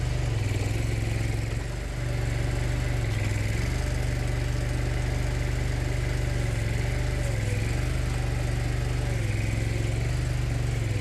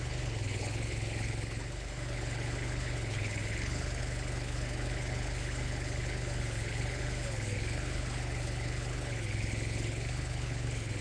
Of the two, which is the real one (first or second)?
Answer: first